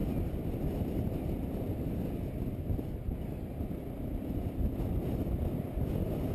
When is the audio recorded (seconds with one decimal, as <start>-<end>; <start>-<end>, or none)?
0.0-6.3